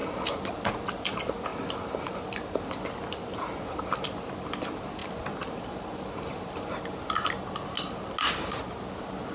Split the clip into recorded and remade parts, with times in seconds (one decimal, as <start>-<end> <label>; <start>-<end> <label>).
0.0-0.7 remade; 0.7-5.0 recorded; 5.0-7.3 remade; 7.3-9.3 recorded

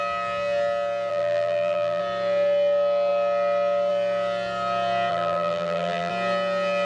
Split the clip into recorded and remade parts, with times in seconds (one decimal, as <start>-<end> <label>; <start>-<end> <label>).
0.0-1.1 recorded; 1.1-2.0 remade; 2.0-5.1 recorded; 5.1-6.1 remade; 6.1-6.8 recorded

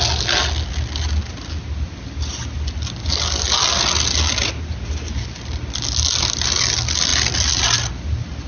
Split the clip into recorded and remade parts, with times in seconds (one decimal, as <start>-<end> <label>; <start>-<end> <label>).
0.0-7.1 recorded; 7.1-7.6 remade; 7.6-8.5 recorded

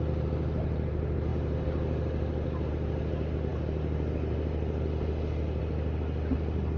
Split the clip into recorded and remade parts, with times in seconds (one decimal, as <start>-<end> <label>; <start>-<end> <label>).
0.0-6.8 recorded